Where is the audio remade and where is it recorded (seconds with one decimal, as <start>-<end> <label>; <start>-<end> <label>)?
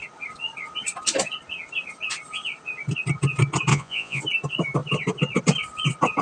0.0-3.7 recorded; 3.7-4.2 remade; 4.2-6.2 recorded